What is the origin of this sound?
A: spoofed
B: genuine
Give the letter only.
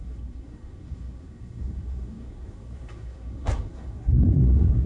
A